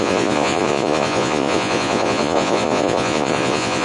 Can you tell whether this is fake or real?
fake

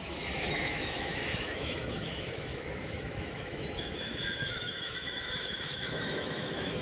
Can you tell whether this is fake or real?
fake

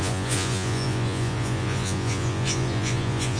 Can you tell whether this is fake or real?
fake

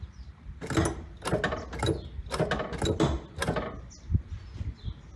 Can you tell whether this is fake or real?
real